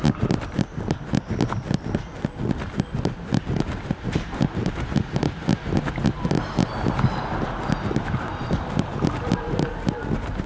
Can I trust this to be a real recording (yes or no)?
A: yes